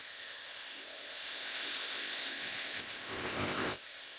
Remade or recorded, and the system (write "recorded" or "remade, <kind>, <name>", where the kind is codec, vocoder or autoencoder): remade, codec, ZipCodec